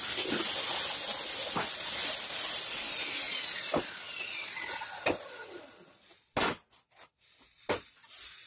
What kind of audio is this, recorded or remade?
recorded